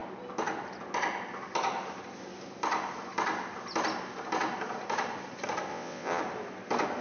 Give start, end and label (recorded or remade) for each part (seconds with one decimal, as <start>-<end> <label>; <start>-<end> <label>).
0.0-5.7 recorded; 5.7-6.2 remade; 6.2-7.0 recorded